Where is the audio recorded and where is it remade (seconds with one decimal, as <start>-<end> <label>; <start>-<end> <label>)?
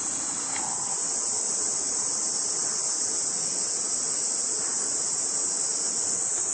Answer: 0.0-6.5 recorded